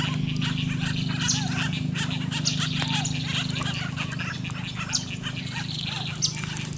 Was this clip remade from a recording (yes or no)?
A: no